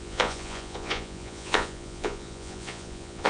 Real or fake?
fake